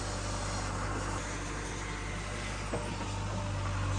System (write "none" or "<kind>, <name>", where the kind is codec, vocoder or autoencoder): none